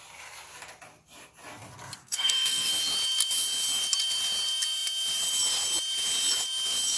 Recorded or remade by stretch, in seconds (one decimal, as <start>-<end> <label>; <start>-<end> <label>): 0.0-2.0 recorded; 2.0-2.7 remade; 2.7-7.0 recorded